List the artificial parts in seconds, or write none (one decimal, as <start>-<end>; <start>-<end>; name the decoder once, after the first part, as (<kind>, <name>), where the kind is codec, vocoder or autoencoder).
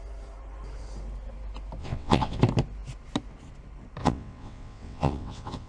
1.8-2.4 (vocoder, WaveNeXt); 4.0-5.7